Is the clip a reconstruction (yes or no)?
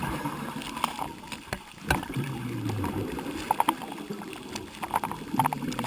no